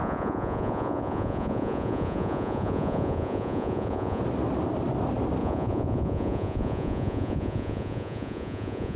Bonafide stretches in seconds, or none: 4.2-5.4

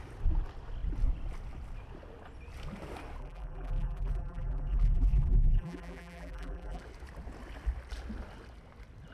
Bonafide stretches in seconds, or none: 0.0-3.2; 6.8-9.1

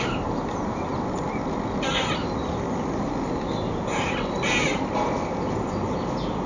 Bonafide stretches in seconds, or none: 0.0-6.5

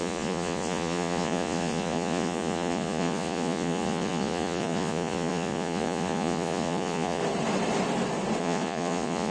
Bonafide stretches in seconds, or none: 7.2-8.4

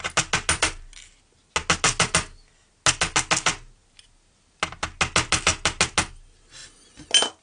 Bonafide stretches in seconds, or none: 0.0-7.4

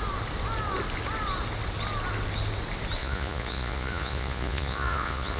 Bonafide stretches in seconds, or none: 0.0-3.0